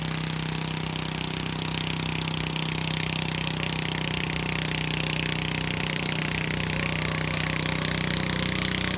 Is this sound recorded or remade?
recorded